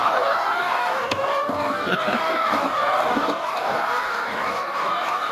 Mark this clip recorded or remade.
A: remade